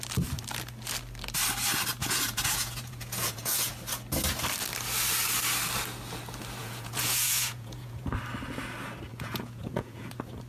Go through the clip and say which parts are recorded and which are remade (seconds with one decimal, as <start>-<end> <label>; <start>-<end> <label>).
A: 0.0-2.0 recorded; 2.0-3.7 remade; 3.7-6.6 recorded; 6.6-8.1 remade; 8.1-9.1 recorded; 9.1-10.1 remade; 10.1-10.5 recorded